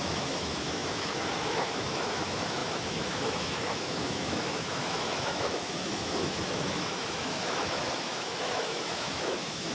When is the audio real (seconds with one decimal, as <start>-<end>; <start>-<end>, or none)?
none